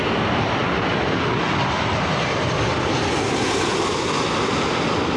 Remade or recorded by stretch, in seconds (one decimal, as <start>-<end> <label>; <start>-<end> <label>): 0.0-5.2 recorded